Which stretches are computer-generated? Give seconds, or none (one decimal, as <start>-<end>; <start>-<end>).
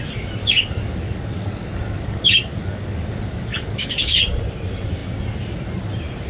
0.4-4.2